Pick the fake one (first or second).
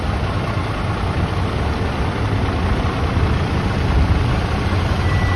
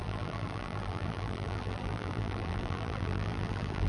second